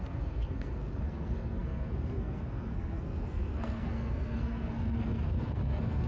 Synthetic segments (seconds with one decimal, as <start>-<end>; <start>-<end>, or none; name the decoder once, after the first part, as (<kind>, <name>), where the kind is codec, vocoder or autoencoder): 0.0-6.1 (codec, SNAC)

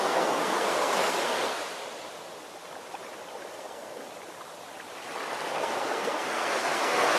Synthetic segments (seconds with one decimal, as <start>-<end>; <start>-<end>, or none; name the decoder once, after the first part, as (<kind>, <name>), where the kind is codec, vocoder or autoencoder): 0.0-1.6 (codec, SNAC); 3.5-4.0; 5.5-7.2